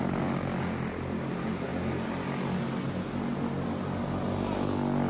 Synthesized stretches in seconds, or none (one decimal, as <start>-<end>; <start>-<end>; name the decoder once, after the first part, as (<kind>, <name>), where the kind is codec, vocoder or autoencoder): none